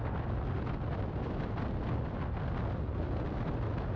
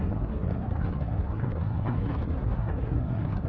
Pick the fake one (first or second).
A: second